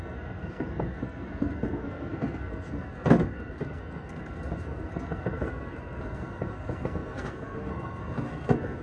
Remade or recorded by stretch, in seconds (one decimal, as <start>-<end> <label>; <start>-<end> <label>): 0.0-8.8 remade